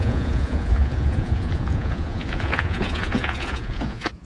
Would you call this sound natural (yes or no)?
no